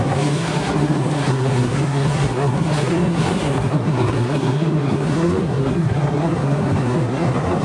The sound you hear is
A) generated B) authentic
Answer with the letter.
A